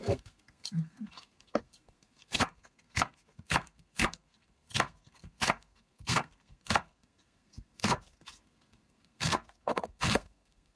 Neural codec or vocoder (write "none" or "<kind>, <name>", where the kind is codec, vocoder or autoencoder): codec, SNAC